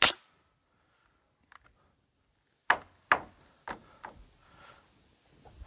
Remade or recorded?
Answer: recorded